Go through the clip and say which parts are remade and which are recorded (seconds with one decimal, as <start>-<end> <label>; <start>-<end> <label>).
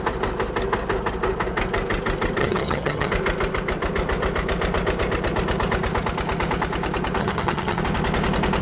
0.0-2.4 recorded; 2.4-3.1 remade; 3.1-7.2 recorded; 7.2-7.8 remade; 7.8-8.6 recorded